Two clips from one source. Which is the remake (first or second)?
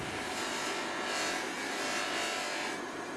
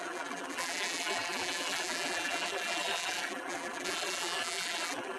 second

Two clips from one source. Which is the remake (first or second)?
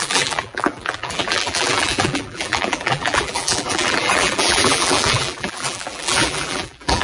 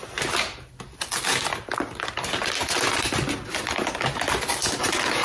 first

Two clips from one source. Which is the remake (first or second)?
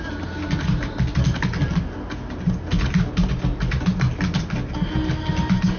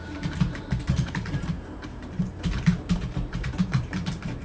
second